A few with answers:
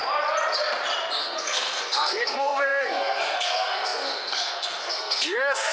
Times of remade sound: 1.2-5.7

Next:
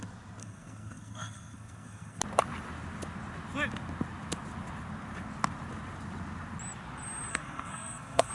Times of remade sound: 0.4-2.2; 7.3-8.3